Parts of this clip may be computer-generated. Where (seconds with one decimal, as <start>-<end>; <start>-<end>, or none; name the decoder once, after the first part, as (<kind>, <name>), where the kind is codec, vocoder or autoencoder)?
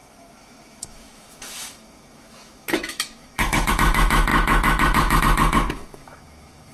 0.0-6.7 (autoencoder, DAC-VAE)